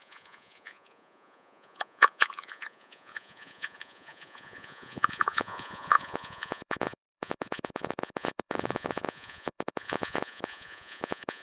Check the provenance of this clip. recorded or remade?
remade